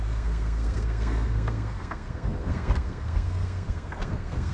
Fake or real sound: fake